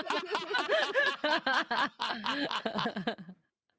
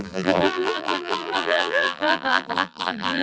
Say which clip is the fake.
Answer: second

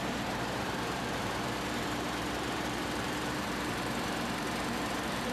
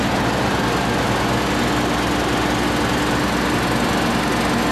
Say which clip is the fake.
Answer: first